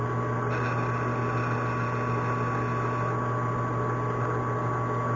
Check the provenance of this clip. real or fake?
real